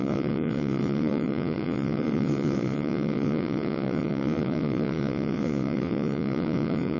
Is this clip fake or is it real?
fake